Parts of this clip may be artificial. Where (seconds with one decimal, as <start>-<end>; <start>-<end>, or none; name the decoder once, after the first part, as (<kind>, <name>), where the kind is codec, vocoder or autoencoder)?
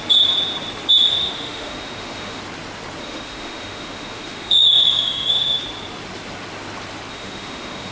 1.1-2.4 (autoencoder, DAC-VAE); 3.0-5.6; 7.1-7.9